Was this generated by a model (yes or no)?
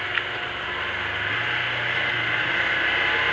no